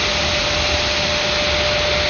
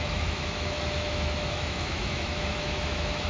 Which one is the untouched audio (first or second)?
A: first